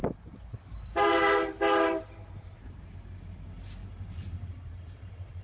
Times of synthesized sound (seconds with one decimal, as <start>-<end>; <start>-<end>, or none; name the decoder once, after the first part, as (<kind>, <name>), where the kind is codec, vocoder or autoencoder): 0.0-3.2 (vocoder, BigVGAN v2); 3.8-4.5